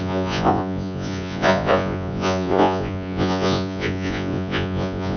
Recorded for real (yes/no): no